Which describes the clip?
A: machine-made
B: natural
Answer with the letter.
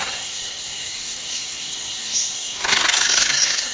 A